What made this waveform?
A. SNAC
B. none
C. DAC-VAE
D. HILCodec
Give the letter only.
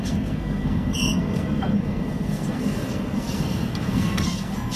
A